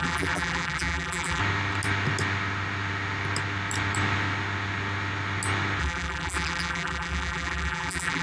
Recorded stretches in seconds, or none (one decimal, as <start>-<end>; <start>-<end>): 1.4-5.8